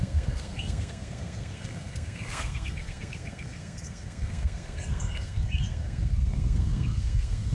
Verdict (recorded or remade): remade